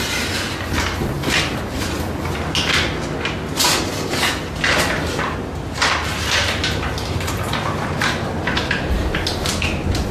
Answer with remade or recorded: recorded